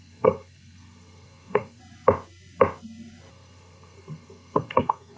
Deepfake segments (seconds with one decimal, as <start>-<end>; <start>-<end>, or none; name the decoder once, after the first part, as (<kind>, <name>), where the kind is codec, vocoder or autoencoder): 0.0-1.8 (codec, SNAC); 3.3-5.2